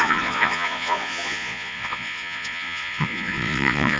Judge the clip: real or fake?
fake